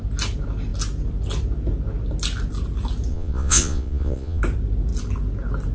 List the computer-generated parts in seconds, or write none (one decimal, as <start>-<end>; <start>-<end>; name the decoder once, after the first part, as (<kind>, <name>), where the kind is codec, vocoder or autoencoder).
3.1-4.4 (vocoder, Vocos)